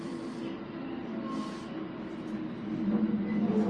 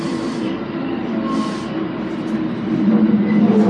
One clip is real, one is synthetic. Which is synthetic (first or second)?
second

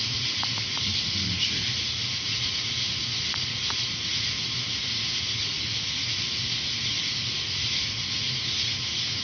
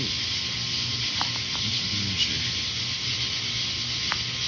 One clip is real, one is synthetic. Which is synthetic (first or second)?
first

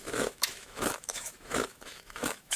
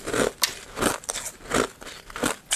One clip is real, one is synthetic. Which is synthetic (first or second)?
first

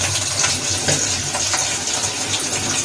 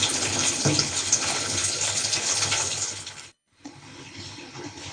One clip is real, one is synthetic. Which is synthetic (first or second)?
second